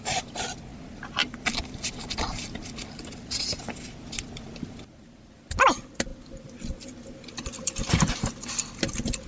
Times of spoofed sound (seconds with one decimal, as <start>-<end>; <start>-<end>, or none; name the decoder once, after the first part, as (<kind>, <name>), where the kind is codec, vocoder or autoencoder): none